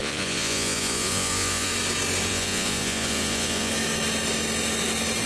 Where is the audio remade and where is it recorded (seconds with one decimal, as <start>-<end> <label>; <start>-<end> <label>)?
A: 0.0-1.7 remade; 1.7-2.3 recorded; 2.3-3.7 remade; 3.7-5.3 recorded